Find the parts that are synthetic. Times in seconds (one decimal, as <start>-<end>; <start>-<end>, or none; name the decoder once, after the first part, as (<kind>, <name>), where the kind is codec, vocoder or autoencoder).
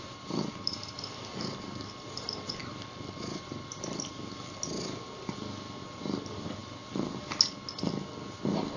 none